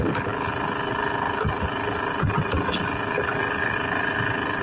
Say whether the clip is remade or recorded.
recorded